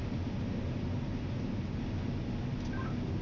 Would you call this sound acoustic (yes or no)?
yes